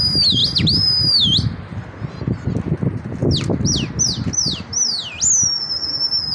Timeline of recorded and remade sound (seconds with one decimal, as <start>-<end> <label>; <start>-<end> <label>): 0.0-6.3 recorded